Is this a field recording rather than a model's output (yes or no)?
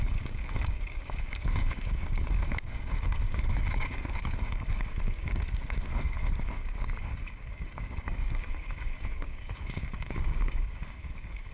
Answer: no